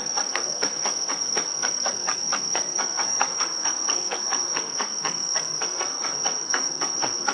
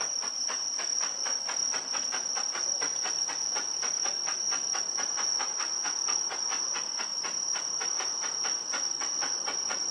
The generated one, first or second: first